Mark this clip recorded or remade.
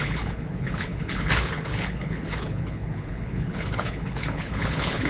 remade